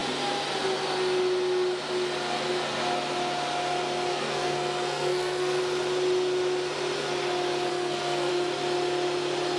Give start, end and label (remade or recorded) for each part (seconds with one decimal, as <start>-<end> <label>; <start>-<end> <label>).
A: 0.0-4.1 recorded; 4.1-5.6 remade; 5.6-7.7 recorded; 7.7-8.3 remade; 8.3-9.6 recorded